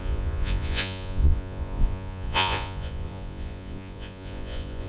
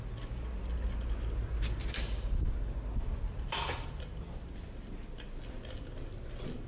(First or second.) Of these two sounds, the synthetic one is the first